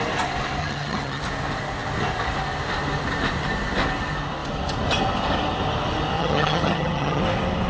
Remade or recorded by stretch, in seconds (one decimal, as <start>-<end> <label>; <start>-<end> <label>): 0.0-0.6 recorded; 0.6-1.2 remade; 1.2-6.2 recorded; 6.2-7.2 remade; 7.2-7.7 recorded